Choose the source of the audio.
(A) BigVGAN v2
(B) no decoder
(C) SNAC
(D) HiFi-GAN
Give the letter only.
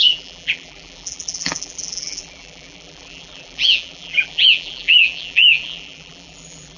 A